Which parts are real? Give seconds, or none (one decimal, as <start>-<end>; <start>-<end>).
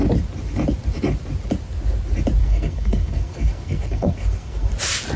0.0-2.4; 4.7-5.2